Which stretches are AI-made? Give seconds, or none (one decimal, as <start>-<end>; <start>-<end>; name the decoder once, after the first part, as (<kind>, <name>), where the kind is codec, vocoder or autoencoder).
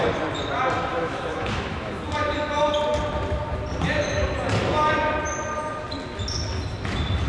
0.9-1.9 (autoencoder, DAC-VAE)